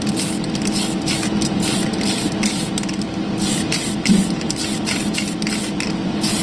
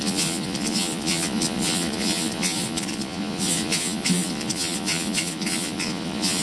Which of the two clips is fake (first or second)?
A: second